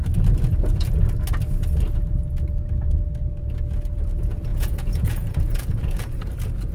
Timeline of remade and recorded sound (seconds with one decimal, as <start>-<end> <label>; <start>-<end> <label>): 0.0-0.5 recorded; 0.5-1.0 remade; 1.0-4.5 recorded; 4.5-6.3 remade; 6.3-6.7 recorded